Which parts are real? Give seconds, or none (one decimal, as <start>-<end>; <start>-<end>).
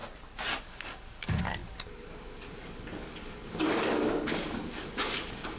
0.0-0.6